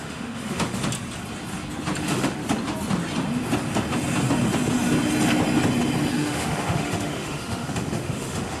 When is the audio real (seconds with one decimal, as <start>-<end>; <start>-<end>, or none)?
0.8-2.0; 2.4-6.1